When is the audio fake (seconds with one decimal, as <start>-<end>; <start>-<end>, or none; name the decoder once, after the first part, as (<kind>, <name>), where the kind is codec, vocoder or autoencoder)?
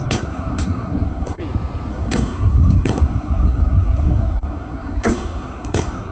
0.0-1.4 (codec, SNAC); 1.9-6.1